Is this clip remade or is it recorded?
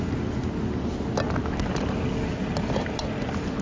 recorded